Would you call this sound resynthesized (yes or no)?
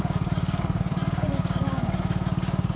yes